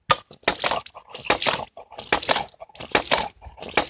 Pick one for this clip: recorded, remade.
recorded